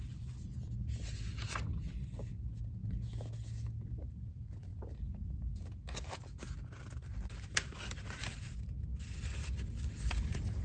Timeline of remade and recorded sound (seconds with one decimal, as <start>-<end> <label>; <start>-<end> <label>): 0.0-10.6 recorded